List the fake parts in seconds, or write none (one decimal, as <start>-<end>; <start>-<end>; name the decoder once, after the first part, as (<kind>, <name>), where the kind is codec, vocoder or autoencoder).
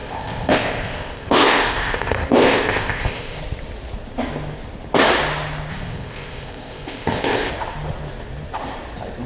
0.0-3.4 (codec, ZipCodec); 5.7-7.5